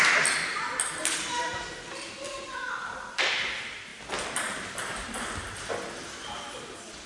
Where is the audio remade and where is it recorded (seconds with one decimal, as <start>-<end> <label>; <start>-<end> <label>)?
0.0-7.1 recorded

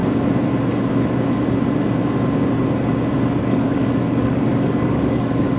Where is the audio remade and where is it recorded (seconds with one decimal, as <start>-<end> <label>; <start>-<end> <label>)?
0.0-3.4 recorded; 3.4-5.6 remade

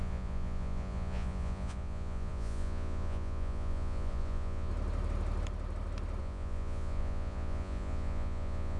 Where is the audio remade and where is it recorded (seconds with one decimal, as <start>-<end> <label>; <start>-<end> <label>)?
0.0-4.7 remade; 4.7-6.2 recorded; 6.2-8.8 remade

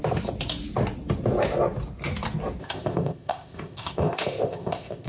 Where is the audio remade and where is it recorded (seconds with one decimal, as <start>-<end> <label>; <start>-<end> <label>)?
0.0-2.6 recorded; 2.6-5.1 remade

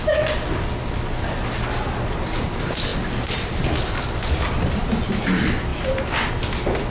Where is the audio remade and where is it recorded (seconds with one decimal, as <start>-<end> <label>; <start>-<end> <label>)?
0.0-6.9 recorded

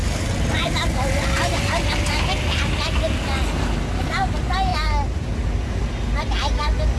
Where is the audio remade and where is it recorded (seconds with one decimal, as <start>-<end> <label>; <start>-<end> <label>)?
0.0-7.0 recorded

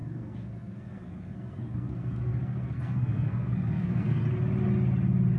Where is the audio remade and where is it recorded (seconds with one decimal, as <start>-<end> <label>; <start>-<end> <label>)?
0.0-4.2 remade; 4.2-5.4 recorded

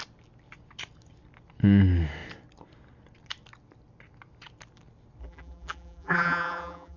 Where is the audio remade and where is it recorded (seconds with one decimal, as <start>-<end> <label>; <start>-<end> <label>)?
0.0-5.2 recorded; 5.2-7.0 remade